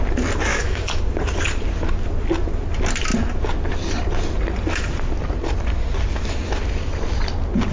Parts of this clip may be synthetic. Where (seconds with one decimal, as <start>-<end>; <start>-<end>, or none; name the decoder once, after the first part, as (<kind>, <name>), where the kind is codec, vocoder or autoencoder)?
0.5-1.0 (autoencoder, DAC-VAE)